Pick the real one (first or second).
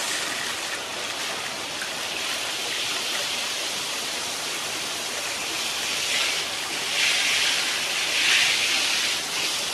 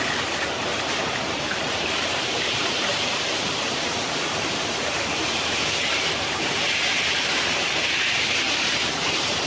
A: first